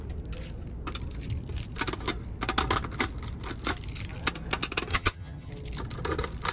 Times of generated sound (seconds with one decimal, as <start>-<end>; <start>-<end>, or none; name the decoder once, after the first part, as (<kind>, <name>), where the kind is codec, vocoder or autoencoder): 4.9-5.5 (vocoder, HiFi-GAN)